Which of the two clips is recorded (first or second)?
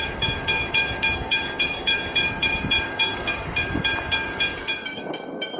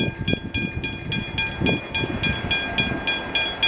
second